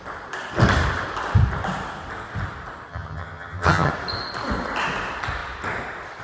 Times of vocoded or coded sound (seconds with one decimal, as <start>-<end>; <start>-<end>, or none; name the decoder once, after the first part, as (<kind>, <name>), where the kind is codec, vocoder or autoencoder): 2.9-3.9 (vocoder, HiFi-GAN)